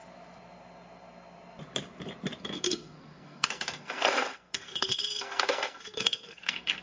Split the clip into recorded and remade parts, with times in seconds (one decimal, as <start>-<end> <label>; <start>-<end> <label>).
0.0-2.4 recorded; 2.4-6.8 remade